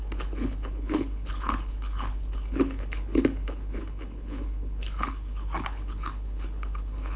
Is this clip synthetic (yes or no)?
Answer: yes